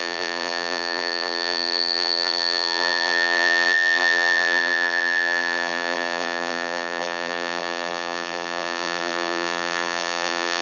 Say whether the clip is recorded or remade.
remade